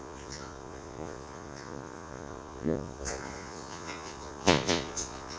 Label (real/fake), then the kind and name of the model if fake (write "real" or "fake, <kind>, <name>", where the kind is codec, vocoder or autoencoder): fake, vocoder, Vocos